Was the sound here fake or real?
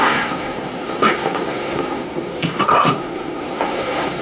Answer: fake